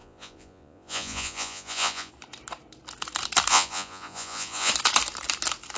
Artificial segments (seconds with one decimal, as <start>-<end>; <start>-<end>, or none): 0.0-2.1; 3.5-4.7